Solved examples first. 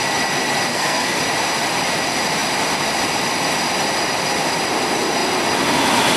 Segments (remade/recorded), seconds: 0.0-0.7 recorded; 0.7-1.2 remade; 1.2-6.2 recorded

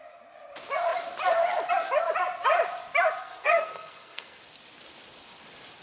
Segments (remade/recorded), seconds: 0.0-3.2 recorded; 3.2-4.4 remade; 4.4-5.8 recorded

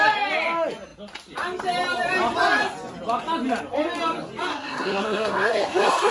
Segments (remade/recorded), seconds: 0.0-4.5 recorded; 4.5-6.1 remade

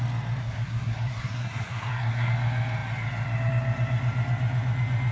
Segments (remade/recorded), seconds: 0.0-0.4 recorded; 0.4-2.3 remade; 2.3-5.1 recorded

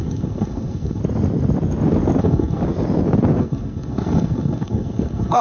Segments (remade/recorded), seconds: 0.0-1.0 remade; 1.0-2.2 recorded; 2.2-2.6 remade; 2.6-3.4 recorded; 3.4-5.4 remade